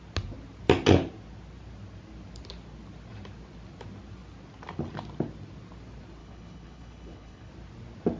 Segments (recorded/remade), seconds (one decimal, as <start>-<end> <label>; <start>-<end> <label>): 0.0-6.2 recorded; 6.2-7.5 remade; 7.5-8.2 recorded